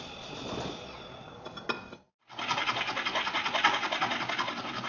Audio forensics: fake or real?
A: real